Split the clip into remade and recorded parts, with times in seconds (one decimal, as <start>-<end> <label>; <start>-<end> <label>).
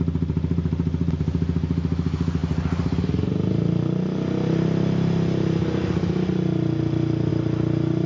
0.0-8.1 recorded